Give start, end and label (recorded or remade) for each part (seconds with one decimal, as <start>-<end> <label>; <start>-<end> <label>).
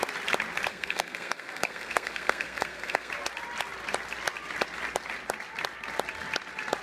0.0-0.7 recorded; 0.7-3.1 remade; 3.1-6.8 recorded